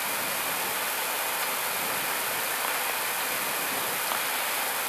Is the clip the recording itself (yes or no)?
yes